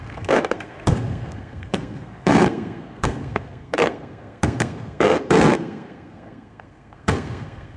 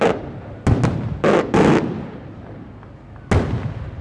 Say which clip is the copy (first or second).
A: first